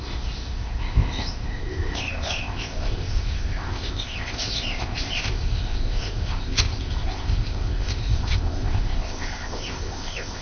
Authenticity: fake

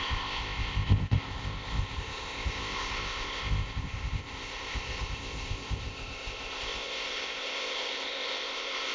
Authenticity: fake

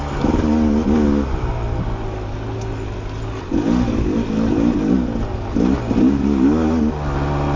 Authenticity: real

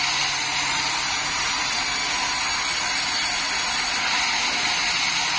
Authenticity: real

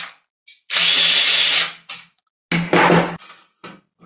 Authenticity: real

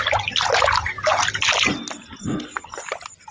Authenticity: real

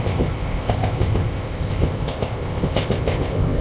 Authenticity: fake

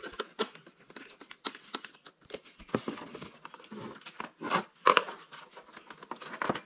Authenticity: real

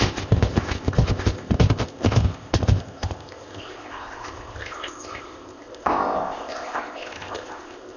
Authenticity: fake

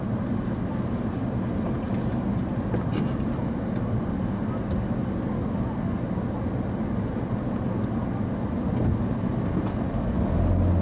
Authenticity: real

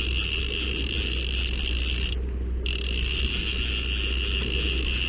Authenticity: real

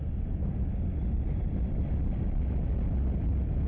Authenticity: real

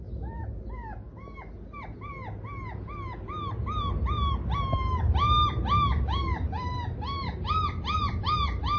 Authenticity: real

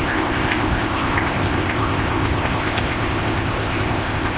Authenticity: fake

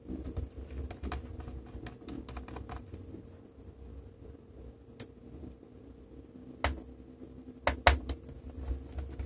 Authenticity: real